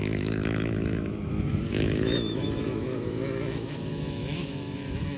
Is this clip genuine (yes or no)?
no